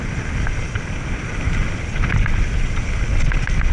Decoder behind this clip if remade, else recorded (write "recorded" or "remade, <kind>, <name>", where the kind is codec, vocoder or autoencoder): recorded